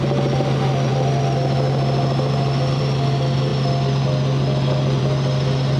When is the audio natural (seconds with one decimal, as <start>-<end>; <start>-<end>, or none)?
0.0-5.8